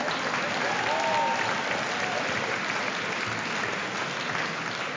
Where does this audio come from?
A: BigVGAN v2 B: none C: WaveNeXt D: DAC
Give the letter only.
B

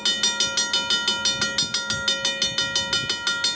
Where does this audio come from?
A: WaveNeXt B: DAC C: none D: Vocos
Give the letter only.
C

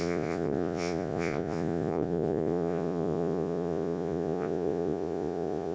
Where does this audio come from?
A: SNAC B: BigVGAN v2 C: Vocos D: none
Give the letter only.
C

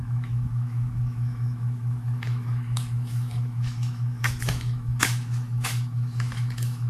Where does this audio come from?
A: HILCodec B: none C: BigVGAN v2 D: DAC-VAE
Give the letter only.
D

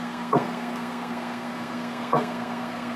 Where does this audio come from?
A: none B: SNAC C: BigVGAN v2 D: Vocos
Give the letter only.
B